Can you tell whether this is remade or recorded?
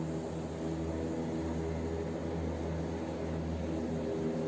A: recorded